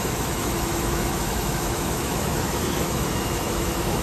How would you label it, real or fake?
fake